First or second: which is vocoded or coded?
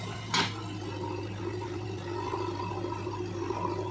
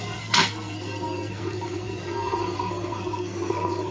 second